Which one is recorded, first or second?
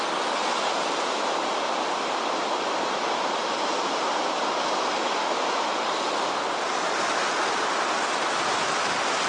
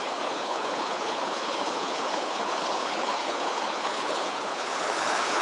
first